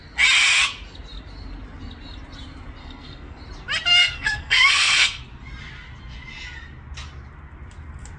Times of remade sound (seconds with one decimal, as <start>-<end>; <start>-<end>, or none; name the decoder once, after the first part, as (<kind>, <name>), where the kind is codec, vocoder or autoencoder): 2.8-3.4 (codec, SNAC); 4.0-5.2